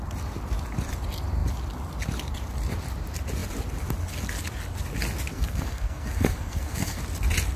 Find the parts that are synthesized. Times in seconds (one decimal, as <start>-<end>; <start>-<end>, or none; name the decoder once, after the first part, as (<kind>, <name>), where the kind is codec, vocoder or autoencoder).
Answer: 5.3-7.0 (codec, SNAC)